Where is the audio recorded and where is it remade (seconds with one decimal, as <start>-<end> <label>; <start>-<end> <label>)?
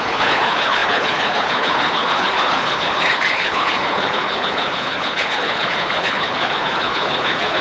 0.0-7.6 remade